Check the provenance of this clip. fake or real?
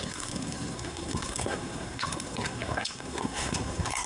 fake